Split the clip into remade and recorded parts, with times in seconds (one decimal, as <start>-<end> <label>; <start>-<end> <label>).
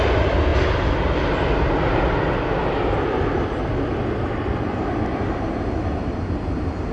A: 0.0-6.9 recorded